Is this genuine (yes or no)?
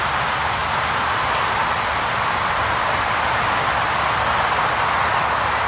yes